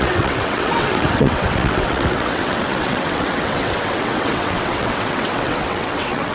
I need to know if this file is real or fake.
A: fake